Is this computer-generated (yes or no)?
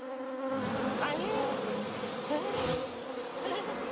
no